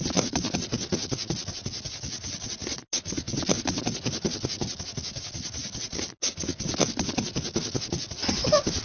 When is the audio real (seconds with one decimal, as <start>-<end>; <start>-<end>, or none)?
0.0-8.8